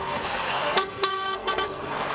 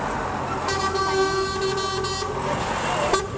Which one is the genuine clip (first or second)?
second